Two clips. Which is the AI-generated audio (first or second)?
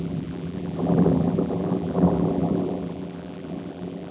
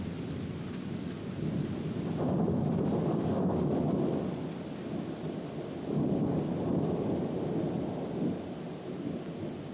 first